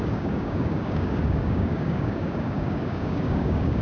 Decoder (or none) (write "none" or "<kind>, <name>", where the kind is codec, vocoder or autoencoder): codec, DAC